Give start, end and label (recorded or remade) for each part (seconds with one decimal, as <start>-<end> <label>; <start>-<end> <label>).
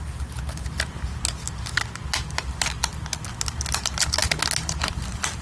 0.0-5.4 recorded